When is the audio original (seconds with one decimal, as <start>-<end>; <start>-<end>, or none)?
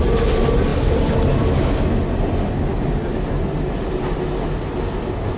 0.0-5.4